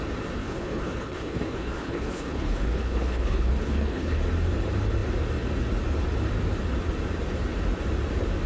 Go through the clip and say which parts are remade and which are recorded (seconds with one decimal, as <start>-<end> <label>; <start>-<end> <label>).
0.0-0.4 recorded; 0.4-4.2 remade; 4.2-8.5 recorded